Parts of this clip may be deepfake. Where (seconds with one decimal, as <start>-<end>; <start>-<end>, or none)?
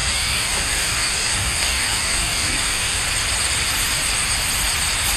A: 0.0-3.0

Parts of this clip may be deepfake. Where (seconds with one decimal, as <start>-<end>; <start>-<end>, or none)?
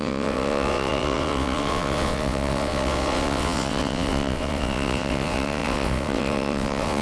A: 0.0-7.0